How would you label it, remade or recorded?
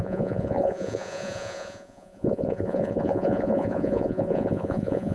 remade